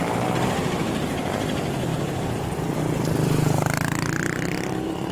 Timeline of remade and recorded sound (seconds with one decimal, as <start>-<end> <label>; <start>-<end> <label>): 0.0-5.1 recorded